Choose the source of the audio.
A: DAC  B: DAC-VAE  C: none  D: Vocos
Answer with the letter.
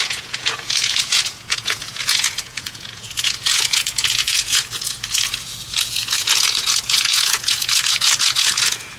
D